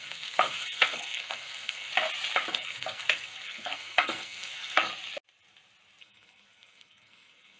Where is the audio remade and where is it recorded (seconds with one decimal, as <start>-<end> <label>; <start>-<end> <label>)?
0.0-1.9 remade; 1.9-2.5 recorded; 2.5-4.9 remade; 4.9-6.0 recorded; 6.0-7.6 remade